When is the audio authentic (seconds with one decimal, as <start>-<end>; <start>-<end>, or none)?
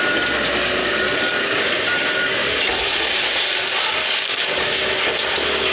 0.0-0.8; 2.6-4.0; 4.9-5.7